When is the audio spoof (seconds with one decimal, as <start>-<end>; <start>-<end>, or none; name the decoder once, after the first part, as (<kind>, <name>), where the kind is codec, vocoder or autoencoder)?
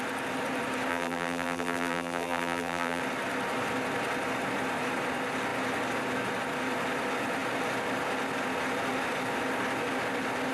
0.9-3.0 (vocoder, BigVGAN v2)